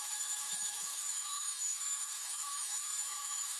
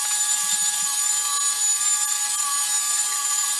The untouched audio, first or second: second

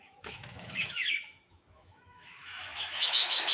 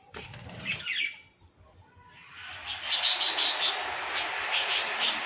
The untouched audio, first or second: second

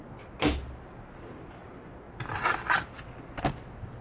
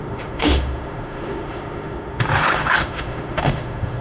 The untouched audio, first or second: first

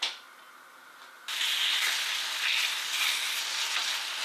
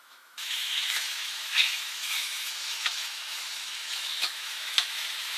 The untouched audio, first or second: first